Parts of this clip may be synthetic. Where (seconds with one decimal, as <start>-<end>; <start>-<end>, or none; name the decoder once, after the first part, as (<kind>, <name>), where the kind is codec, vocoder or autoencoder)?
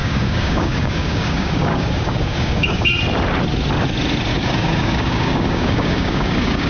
0.0-2.9 (codec, DAC); 4.3-6.7